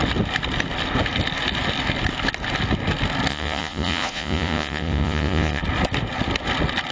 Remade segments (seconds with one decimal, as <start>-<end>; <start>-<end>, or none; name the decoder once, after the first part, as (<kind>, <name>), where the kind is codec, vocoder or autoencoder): 3.3-5.6 (vocoder, Vocos)